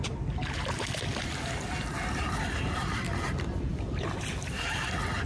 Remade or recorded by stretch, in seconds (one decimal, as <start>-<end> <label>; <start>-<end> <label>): 0.0-5.3 recorded